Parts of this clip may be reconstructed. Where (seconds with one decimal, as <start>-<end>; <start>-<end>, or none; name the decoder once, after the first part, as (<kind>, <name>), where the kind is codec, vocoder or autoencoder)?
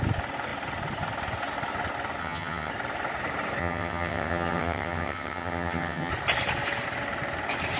2.2-2.7 (vocoder, HiFi-GAN); 3.6-6.1